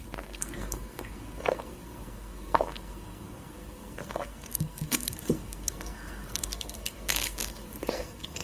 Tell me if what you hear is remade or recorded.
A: remade